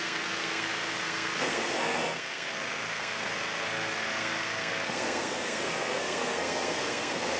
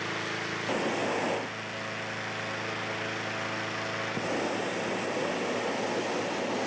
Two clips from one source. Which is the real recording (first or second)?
second